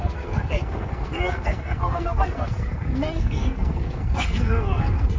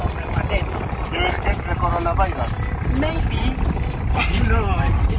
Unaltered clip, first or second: second